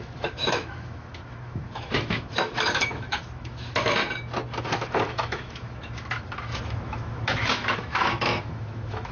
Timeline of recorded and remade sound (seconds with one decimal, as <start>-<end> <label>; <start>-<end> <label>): 0.0-4.0 remade; 4.0-4.6 recorded; 4.6-9.1 remade